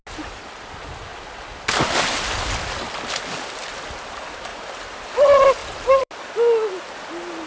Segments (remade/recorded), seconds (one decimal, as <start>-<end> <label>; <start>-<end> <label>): 0.0-4.5 recorded; 4.5-5.0 remade; 5.0-5.6 recorded; 5.6-6.1 remade; 6.1-7.5 recorded

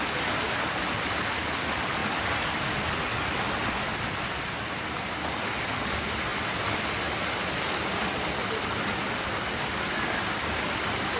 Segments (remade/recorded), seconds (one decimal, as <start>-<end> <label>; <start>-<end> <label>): 0.0-11.2 recorded

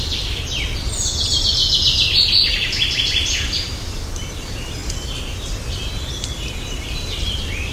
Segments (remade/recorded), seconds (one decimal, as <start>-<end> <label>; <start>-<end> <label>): 0.0-1.6 remade; 1.6-3.0 recorded; 3.0-4.8 remade; 4.8-5.4 recorded; 5.4-7.7 remade

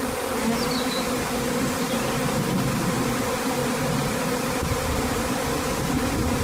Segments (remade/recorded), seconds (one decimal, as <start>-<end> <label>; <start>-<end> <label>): 0.0-3.6 recorded; 3.6-4.9 remade; 4.9-6.4 recorded

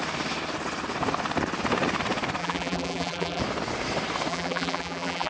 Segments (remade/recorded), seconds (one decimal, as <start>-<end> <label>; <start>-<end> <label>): 0.0-2.4 recorded; 2.4-3.4 remade; 3.4-4.3 recorded; 4.3-5.3 remade

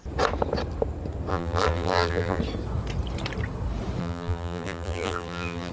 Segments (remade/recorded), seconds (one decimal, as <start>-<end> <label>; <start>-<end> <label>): 0.0-1.3 recorded; 1.3-2.4 remade; 2.4-4.0 recorded; 4.0-5.7 remade

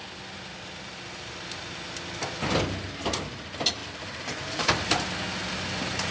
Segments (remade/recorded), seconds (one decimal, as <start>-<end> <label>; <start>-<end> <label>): 0.0-3.8 recorded; 3.8-5.1 remade; 5.1-6.1 recorded